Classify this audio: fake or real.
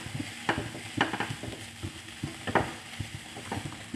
real